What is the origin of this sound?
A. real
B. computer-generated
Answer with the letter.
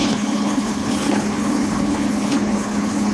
B